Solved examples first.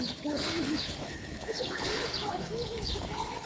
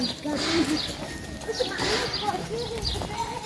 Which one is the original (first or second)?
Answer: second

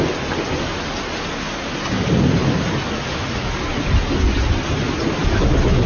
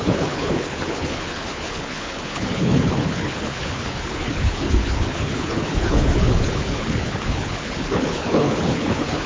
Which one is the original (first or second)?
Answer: first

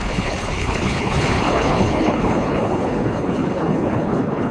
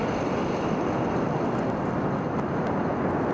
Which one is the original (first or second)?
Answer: second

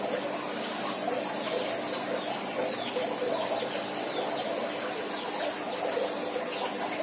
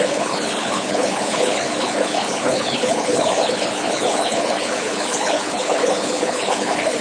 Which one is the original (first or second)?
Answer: first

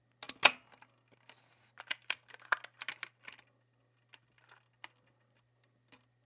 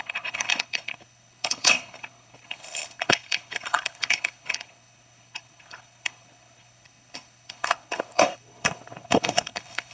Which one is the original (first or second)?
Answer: first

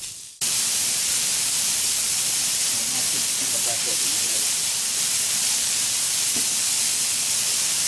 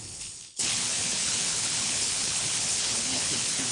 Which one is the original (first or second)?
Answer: first